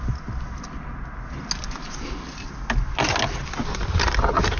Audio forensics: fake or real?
real